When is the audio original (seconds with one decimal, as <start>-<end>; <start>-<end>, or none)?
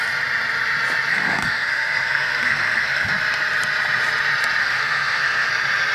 0.0-1.1; 3.1-4.6; 5.5-5.9